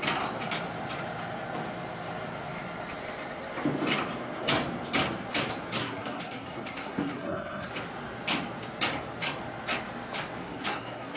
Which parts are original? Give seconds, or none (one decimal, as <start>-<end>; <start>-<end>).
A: 0.0-5.8; 7.7-10.4